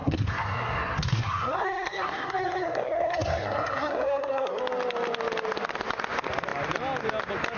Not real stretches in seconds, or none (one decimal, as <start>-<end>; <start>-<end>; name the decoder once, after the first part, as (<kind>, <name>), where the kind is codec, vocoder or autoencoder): 0.0-4.6 (codec, SNAC)